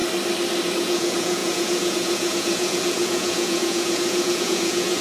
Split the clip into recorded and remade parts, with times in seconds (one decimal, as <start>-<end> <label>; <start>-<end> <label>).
0.0-0.7 recorded; 0.7-5.0 remade